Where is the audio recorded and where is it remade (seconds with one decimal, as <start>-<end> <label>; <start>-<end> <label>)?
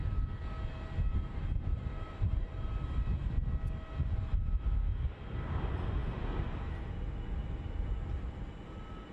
0.0-1.1 recorded; 1.1-2.7 remade; 2.7-9.1 recorded